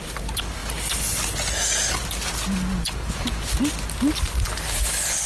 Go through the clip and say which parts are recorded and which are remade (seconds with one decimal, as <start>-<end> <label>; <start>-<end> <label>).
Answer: 0.0-5.3 recorded